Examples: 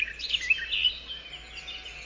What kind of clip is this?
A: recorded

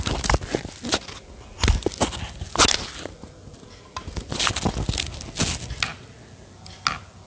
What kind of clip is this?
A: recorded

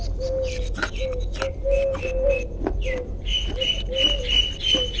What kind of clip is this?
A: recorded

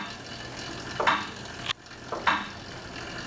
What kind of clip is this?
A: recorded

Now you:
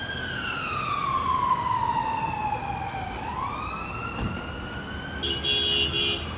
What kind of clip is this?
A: recorded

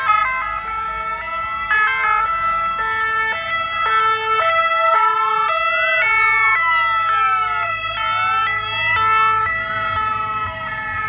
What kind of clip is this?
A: recorded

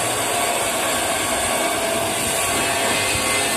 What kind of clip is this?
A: recorded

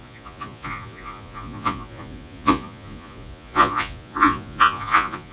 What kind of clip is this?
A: remade